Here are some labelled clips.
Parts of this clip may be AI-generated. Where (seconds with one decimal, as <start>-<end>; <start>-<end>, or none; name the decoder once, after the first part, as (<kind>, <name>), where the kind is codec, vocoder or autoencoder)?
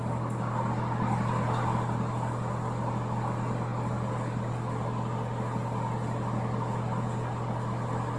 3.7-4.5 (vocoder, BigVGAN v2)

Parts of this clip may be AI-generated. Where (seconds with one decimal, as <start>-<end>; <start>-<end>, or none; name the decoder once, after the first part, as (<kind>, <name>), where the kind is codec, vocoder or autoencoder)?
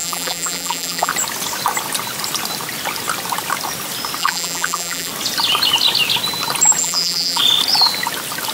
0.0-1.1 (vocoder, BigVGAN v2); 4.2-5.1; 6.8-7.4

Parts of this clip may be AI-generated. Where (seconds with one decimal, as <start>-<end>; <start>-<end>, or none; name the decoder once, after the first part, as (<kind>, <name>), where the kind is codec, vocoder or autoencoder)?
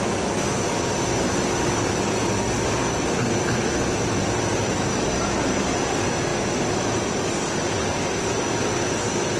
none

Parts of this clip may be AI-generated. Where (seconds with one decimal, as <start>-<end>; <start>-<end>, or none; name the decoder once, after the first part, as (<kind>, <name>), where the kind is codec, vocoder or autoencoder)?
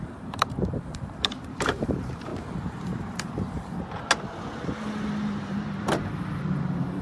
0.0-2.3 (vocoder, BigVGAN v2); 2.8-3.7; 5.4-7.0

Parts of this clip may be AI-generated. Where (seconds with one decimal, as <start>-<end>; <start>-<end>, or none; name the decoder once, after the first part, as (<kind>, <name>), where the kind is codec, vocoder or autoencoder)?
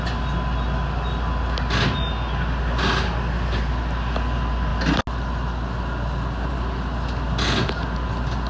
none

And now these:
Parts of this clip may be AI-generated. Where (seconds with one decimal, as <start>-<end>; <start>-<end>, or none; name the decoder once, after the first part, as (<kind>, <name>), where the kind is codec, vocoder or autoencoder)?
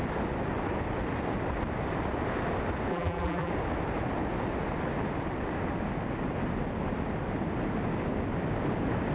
2.9-3.5 (vocoder, BigVGAN v2)